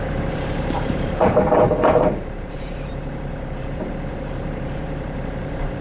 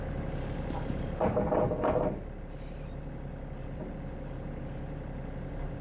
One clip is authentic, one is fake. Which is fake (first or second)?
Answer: first